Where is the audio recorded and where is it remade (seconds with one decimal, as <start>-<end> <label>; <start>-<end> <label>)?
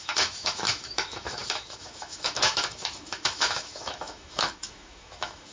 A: 0.0-5.5 remade